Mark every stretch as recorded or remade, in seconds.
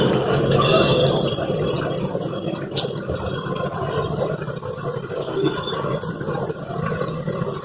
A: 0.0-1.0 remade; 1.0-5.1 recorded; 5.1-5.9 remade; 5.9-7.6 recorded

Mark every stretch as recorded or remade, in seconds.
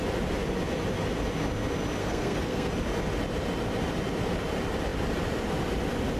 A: 0.0-2.0 recorded; 2.0-2.7 remade; 2.7-6.2 recorded